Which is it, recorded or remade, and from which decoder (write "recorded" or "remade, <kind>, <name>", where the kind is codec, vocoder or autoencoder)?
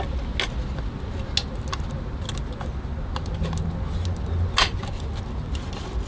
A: recorded